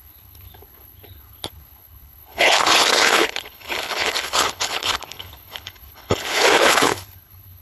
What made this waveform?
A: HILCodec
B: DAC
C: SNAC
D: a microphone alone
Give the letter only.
A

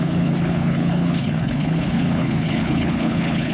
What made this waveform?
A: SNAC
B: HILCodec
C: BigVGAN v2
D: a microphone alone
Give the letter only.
B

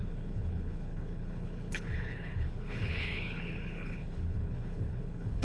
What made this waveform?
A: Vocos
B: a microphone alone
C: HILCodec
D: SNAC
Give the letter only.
C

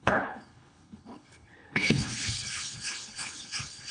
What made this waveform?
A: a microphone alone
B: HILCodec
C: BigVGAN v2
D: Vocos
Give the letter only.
B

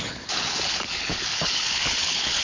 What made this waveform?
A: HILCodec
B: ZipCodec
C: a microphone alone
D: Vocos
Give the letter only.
A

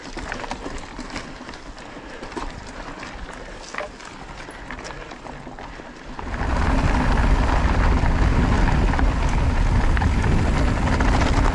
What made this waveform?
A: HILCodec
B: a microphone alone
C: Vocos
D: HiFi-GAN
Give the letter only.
B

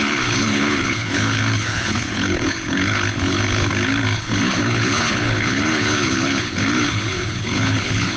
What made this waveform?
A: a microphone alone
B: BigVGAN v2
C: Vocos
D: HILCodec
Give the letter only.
D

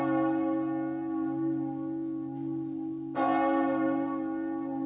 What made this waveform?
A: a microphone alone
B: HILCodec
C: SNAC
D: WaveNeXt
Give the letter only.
A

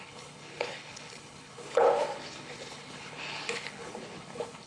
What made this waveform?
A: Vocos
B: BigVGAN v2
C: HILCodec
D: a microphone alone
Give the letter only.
C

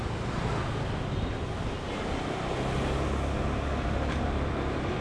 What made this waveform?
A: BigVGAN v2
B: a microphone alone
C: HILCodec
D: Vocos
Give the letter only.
B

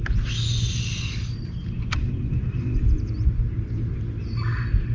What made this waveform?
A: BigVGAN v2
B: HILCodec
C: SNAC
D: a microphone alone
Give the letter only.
D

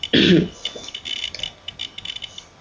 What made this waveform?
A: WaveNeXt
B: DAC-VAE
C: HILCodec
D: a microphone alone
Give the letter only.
D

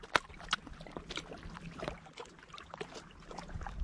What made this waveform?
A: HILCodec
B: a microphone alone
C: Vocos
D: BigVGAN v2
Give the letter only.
B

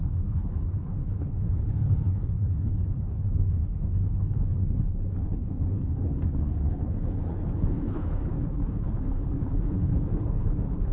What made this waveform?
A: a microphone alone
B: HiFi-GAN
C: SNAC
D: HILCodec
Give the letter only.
D